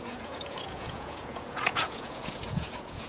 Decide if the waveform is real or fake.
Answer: fake